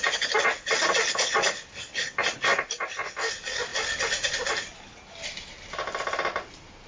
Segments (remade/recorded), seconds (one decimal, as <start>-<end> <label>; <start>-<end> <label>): 0.0-6.9 recorded